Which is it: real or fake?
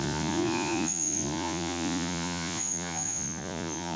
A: fake